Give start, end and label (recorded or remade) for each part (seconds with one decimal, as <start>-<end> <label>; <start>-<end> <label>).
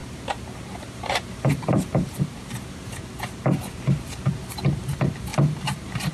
0.0-3.0 remade; 3.0-5.3 recorded; 5.3-6.1 remade